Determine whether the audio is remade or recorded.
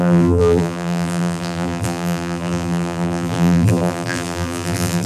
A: remade